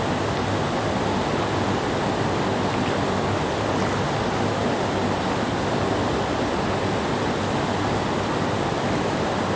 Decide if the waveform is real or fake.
real